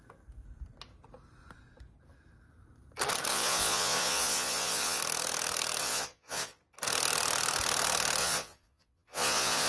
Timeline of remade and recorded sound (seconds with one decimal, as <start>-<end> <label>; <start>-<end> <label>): 0.0-3.3 recorded; 3.3-5.0 remade; 5.0-5.8 recorded; 5.8-6.6 remade; 6.6-8.2 recorded; 8.2-9.7 remade